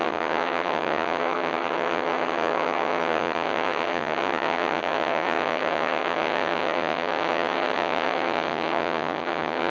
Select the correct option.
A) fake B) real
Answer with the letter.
A